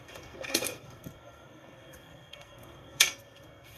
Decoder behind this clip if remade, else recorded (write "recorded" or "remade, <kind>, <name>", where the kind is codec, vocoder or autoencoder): remade, codec, SNAC